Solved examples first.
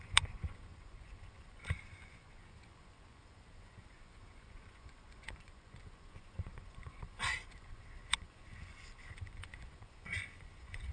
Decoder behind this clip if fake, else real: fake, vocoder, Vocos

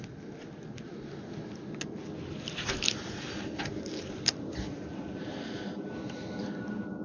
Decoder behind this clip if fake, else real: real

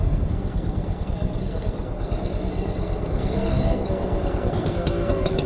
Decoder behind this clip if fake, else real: fake, codec, SNAC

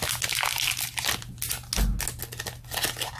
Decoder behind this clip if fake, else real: real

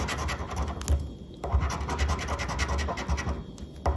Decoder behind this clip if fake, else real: real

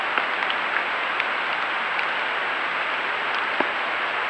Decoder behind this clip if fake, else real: real